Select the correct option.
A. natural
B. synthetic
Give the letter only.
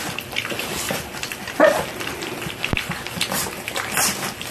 B